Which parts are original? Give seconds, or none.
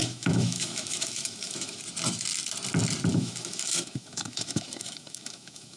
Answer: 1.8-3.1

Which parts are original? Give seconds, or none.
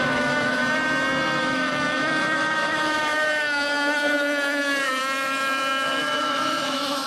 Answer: 0.6-1.4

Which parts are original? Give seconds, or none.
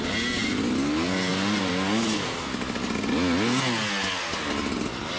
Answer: 0.0-5.2